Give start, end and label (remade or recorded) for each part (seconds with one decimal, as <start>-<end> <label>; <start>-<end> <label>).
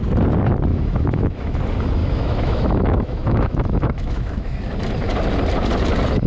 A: 0.0-0.7 recorded; 0.7-1.6 remade; 1.6-2.0 recorded; 2.0-4.6 remade; 4.6-6.3 recorded